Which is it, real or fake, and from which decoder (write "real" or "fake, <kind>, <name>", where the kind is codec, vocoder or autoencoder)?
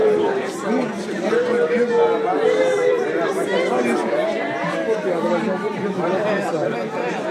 fake, vocoder, BigVGAN v2